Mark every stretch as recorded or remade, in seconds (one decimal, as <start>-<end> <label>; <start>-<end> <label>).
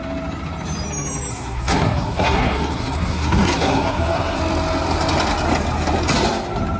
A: 0.0-1.3 recorded; 1.3-4.4 remade; 4.4-6.8 recorded